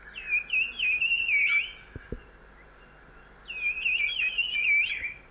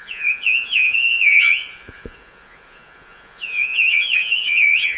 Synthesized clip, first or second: second